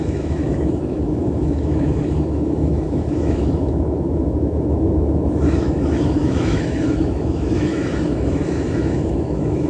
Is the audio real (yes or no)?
no